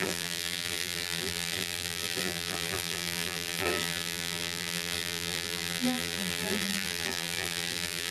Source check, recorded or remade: remade